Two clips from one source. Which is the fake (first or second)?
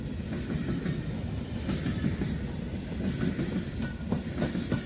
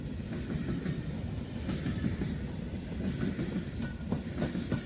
second